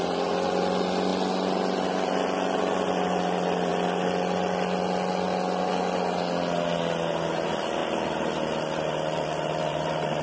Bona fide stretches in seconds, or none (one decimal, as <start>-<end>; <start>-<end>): 0.0-7.8